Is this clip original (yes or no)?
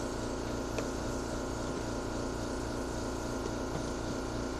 yes